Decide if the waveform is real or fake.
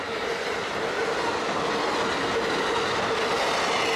real